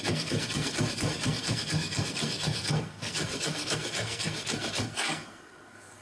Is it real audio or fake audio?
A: fake